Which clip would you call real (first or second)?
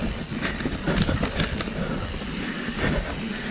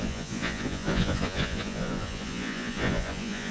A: first